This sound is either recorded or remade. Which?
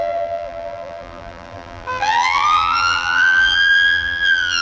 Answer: remade